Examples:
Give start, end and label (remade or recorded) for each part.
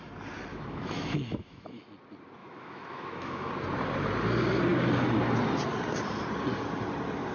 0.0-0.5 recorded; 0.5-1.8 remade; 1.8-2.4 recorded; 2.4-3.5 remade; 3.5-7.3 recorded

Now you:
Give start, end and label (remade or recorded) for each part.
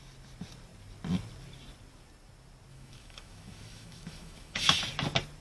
0.0-2.7 recorded; 2.7-4.8 remade; 4.8-5.4 recorded